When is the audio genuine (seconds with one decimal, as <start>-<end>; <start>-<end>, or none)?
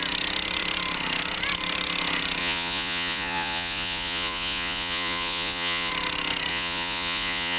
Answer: 0.0-2.4; 5.9-6.5